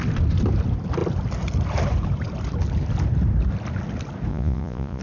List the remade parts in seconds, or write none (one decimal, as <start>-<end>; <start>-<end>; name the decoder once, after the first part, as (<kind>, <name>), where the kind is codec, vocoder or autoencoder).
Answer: 4.3-5.0 (vocoder, Vocos)